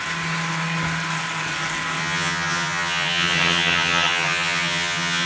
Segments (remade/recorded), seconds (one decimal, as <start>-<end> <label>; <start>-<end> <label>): 0.0-2.0 recorded; 2.0-5.3 remade